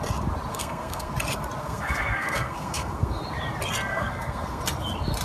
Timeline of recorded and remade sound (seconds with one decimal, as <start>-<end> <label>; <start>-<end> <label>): 0.0-0.5 recorded; 0.5-1.1 remade; 1.1-1.6 recorded; 1.6-3.2 remade; 3.2-3.9 recorded; 3.9-4.6 remade; 4.6-5.2 recorded